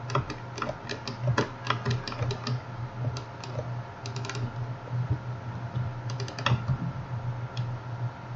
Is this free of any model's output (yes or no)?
yes